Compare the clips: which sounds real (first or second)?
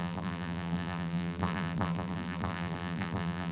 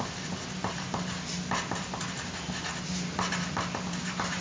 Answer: second